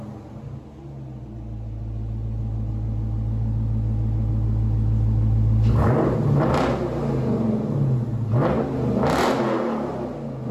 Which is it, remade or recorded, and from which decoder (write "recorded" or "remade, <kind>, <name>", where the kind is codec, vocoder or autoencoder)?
recorded